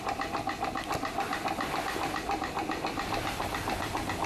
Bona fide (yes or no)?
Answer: yes